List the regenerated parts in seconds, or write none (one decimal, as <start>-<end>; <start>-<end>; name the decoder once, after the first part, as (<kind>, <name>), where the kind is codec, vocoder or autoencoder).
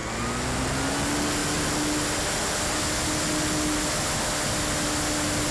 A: none